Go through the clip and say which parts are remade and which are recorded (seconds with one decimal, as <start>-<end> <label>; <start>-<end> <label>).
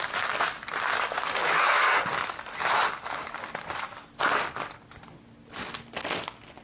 0.0-2.1 recorded; 2.1-2.7 remade; 2.7-6.6 recorded